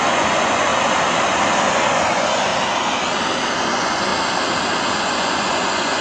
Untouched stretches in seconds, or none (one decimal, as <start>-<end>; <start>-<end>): 0.7-1.6; 2.5-3.6; 4.1-5.0